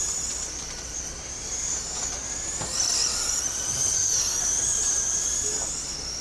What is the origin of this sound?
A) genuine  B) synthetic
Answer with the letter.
A